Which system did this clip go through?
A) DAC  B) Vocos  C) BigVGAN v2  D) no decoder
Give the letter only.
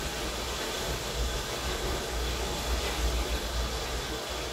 D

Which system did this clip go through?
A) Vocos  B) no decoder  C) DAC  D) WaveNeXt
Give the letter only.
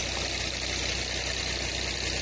B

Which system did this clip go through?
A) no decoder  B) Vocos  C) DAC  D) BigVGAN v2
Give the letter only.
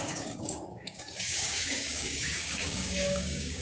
C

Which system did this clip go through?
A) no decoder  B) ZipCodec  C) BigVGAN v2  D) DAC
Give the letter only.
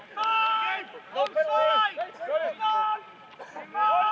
A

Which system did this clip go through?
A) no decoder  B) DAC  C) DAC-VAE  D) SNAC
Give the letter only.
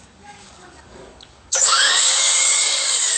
B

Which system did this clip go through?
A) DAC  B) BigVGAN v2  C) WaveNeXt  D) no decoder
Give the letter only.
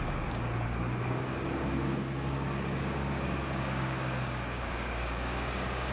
A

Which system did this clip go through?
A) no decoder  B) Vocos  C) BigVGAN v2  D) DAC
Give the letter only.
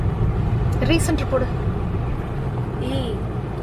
A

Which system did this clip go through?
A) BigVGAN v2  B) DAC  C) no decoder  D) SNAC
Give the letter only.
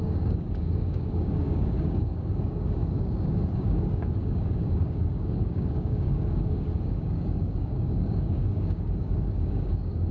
B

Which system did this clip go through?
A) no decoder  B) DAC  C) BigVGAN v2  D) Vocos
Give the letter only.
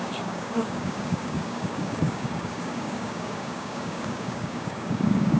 B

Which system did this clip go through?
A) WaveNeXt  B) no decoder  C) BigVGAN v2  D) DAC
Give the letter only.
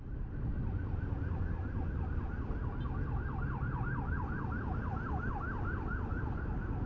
B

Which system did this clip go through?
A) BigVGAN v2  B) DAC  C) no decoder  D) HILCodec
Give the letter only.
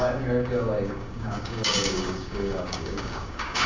B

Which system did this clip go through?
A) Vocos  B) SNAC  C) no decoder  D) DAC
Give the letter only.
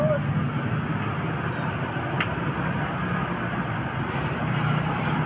C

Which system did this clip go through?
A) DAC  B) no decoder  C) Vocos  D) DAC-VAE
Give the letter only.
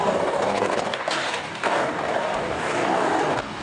A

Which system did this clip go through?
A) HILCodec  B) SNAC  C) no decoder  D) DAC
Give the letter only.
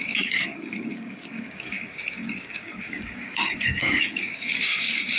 D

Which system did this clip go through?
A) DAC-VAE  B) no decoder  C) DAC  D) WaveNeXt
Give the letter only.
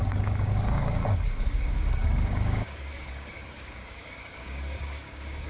C